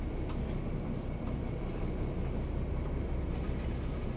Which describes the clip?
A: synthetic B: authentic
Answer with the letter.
B